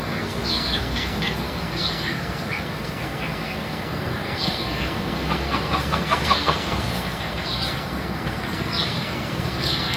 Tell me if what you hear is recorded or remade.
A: remade